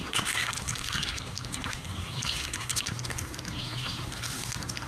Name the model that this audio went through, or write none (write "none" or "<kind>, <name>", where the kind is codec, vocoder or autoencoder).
codec, SNAC